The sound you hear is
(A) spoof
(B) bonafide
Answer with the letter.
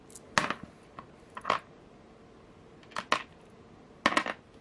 B